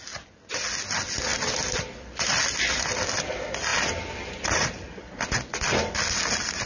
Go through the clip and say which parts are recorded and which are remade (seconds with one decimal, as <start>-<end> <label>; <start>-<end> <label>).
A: 0.0-1.3 recorded; 1.3-3.2 remade; 3.2-6.7 recorded